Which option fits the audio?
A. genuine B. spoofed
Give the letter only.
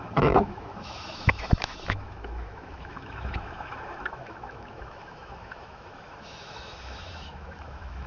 B